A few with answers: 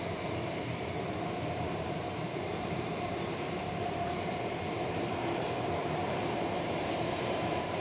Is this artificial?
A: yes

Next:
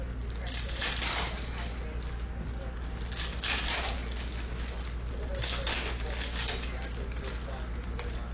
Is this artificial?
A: no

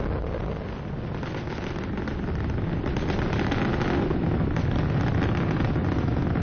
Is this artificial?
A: no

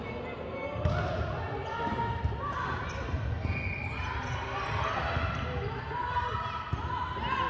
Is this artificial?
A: no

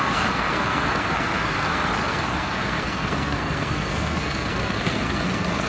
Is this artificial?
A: yes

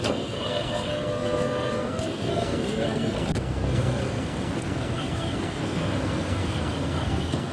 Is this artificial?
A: yes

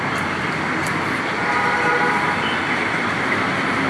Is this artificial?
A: no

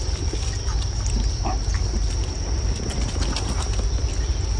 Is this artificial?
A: no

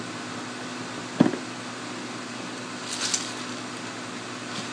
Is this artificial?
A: no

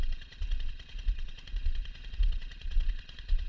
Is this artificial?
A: yes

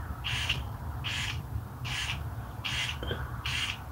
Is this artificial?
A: yes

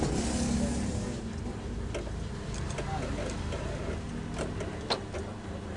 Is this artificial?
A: no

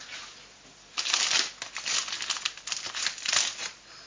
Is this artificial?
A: no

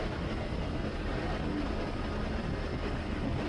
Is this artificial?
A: no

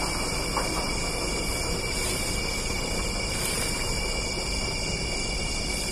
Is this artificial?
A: no